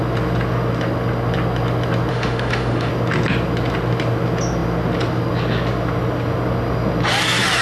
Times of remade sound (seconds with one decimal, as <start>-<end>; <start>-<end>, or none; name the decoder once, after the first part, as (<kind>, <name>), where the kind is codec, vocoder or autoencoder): 2.1-2.9 (autoencoder, DAC-VAE)